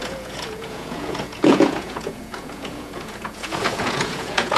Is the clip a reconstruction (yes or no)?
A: yes